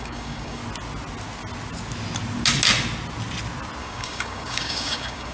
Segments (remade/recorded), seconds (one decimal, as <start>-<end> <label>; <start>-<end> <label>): 0.0-0.6 remade; 0.6-3.8 recorded; 3.8-5.3 remade